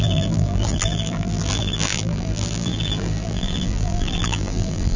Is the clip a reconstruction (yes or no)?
yes